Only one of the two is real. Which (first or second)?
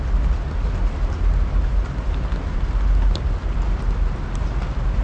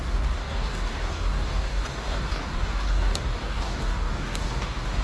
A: first